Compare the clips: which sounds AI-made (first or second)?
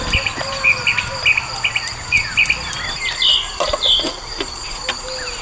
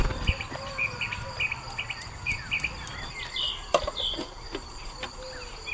second